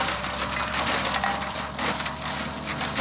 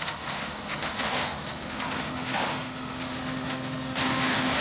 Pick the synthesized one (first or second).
second